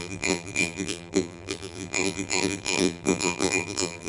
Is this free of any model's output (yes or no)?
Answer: no